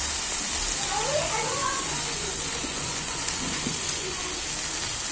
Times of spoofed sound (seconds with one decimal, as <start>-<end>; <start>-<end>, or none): 1.6-4.2